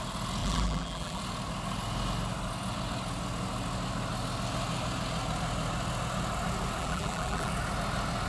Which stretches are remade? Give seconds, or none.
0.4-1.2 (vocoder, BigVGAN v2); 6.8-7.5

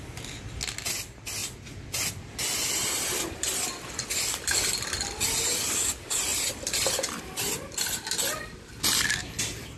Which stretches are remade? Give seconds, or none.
none

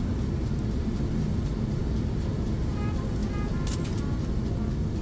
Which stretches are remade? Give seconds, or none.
3.2-3.7 (vocoder, BigVGAN v2)

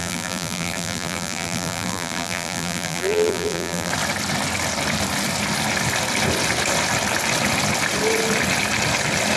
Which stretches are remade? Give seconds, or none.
0.0-3.9 (vocoder, BigVGAN v2)

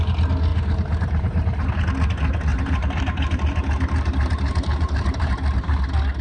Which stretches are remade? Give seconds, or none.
0.5-1.7 (vocoder, BigVGAN v2); 2.5-5.3

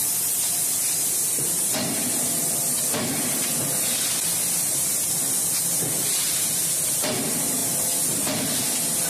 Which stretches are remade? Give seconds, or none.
none

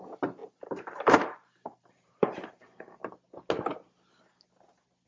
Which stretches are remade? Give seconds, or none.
0.4-3.0 (vocoder, BigVGAN v2)

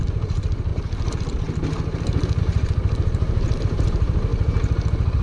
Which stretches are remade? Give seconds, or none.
0.0-0.7 (vocoder, BigVGAN v2); 2.4-4.3